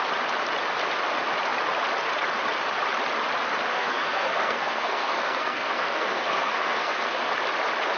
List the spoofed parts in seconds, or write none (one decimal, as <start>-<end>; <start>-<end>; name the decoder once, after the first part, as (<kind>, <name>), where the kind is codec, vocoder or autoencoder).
3.7-7.3 (codec, SNAC)